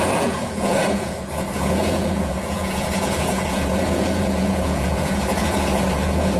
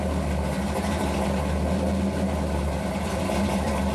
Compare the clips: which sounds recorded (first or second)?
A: second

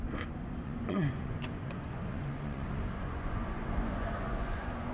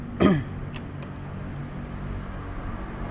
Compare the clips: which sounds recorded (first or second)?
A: second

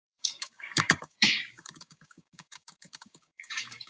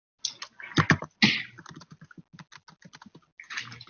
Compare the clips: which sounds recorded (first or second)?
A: second